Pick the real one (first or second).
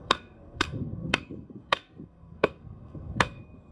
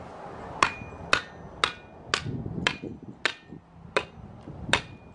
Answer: second